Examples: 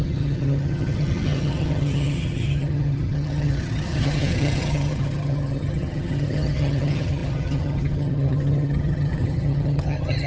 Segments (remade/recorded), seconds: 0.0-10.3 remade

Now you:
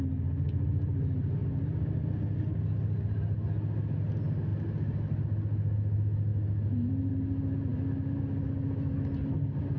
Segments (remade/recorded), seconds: 0.0-9.8 recorded

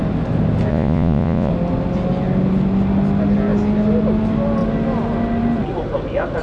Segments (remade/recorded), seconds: 0.0-0.7 recorded; 0.7-1.5 remade; 1.5-6.4 recorded

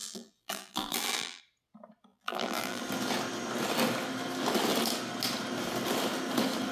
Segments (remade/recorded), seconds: 0.0-1.4 remade; 1.4-2.1 recorded; 2.1-2.8 remade; 2.8-6.7 recorded

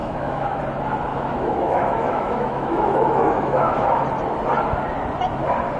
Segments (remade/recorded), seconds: 0.0-0.6 remade; 0.6-1.1 recorded; 1.1-4.0 remade; 4.0-5.8 recorded

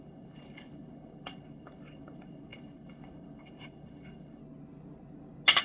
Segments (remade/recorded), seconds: 0.0-4.4 remade; 4.4-5.6 recorded